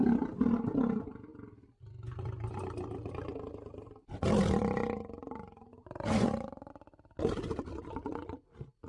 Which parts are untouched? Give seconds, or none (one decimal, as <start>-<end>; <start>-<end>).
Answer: 0.0-5.7; 6.7-8.9